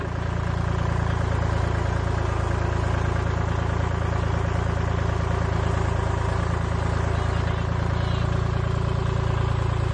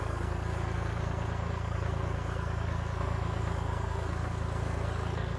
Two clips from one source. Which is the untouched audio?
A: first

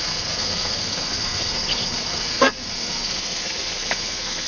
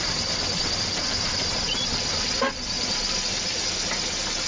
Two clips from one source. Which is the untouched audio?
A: second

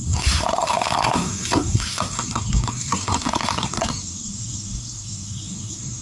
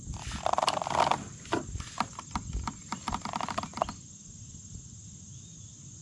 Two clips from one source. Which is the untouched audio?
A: second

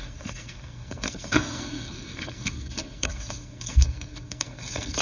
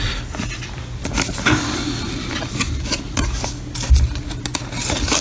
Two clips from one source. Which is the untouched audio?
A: second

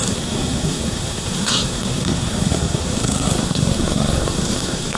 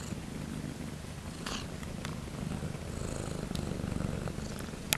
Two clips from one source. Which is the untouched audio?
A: second